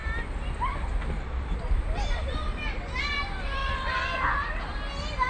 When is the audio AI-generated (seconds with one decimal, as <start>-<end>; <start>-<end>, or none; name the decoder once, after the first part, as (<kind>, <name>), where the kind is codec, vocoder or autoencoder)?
0.0-0.7 (vocoder, BigVGAN v2); 3.6-4.6